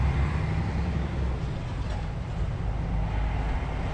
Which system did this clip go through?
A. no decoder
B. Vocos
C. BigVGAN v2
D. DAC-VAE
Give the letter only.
A